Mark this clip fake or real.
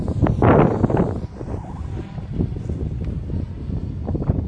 real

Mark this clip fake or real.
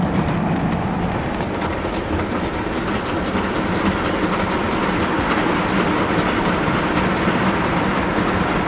real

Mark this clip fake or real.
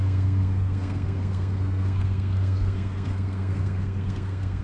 fake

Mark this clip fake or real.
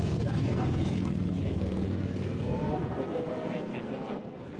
fake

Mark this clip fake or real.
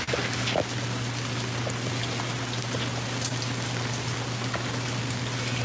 real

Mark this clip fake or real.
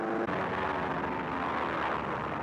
real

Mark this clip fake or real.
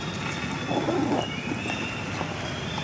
real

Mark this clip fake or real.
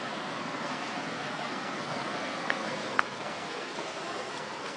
fake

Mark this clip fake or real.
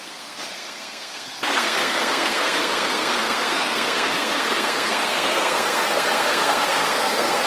fake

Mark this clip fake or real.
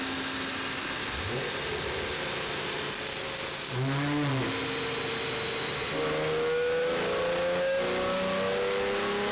real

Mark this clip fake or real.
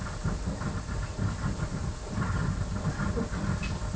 real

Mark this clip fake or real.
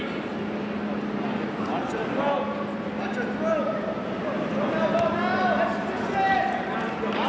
real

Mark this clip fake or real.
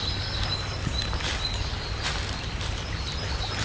real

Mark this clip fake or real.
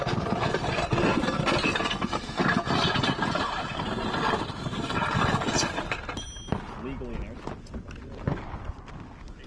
real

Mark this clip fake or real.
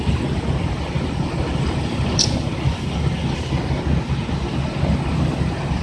real